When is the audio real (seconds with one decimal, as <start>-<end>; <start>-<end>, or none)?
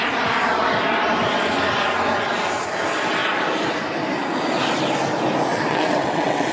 0.0-5.5